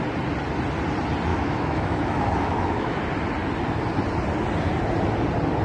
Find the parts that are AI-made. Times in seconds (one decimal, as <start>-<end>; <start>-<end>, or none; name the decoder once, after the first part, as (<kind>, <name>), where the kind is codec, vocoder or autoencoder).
1.3-3.0 (autoencoder, DAC-VAE)